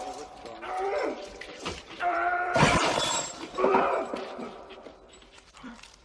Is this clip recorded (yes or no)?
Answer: no